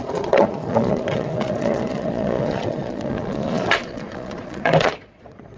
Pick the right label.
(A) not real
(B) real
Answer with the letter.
A